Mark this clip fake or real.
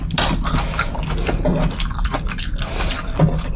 real